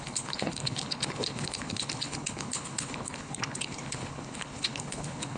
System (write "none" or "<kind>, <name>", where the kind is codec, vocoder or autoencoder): codec, HILCodec